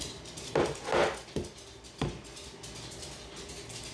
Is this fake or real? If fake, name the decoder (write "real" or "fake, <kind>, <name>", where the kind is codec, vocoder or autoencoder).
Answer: real